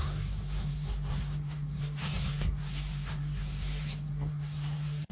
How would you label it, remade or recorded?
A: remade